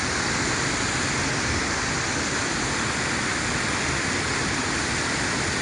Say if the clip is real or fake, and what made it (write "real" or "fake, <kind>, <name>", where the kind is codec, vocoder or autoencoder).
real